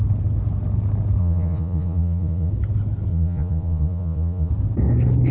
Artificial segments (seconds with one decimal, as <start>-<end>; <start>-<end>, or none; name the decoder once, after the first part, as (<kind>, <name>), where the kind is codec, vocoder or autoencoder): 1.2-2.5 (vocoder, Vocos); 3.1-4.5